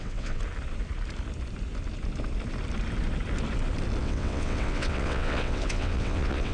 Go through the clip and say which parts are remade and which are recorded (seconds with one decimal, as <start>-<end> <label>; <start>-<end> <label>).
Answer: 0.0-0.4 remade; 0.4-4.0 recorded; 4.0-6.5 remade